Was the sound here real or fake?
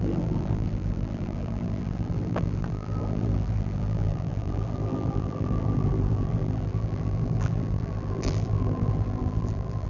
fake